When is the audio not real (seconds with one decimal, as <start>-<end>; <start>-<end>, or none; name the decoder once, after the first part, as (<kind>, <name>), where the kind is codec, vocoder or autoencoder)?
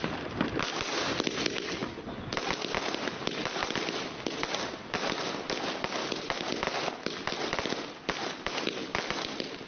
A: none